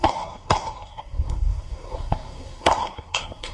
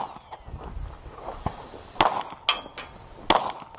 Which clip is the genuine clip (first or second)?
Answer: second